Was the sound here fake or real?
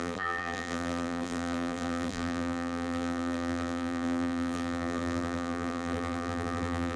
fake